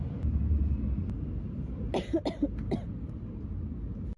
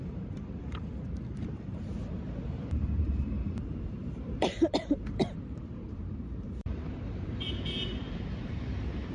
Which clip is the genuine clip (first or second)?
first